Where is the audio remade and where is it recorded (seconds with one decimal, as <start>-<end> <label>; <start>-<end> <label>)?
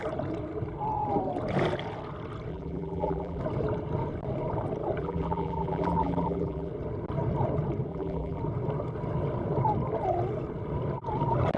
0.0-2.5 recorded; 2.5-3.4 remade; 3.4-5.0 recorded; 5.0-6.7 remade; 6.7-7.9 recorded; 7.9-8.4 remade; 8.4-11.6 recorded